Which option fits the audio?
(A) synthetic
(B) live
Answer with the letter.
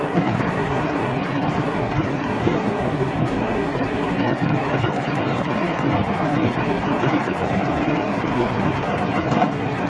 A